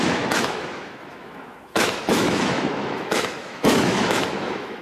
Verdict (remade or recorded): remade